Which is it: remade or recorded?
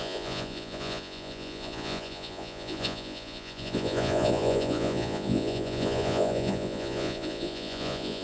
remade